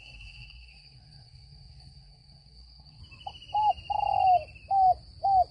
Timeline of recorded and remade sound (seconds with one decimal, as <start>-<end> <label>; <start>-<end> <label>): 0.0-3.0 remade; 3.0-5.5 recorded